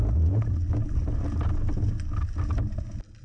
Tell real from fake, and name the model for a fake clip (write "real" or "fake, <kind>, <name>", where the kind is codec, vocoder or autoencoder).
real